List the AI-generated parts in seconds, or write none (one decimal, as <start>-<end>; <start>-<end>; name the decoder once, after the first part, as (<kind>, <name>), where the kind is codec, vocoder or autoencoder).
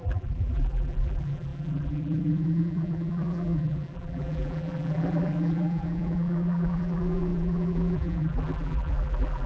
0.0-9.5 (vocoder, BigVGAN v2)